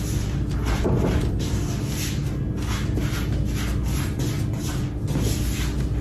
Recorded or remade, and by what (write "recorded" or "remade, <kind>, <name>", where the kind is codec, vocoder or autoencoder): recorded